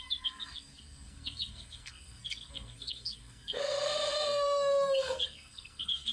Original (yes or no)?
no